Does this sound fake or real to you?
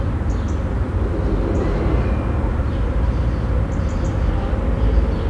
real